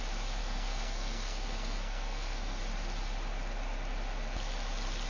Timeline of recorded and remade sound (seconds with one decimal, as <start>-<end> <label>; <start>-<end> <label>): 0.0-0.4 recorded; 0.4-2.6 remade; 2.6-5.1 recorded